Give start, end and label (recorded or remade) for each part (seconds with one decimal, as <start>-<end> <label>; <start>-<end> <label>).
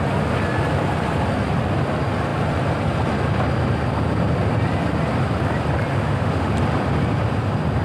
0.0-5.9 recorded; 5.9-6.5 remade; 6.5-7.8 recorded